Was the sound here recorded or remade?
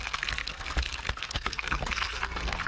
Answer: remade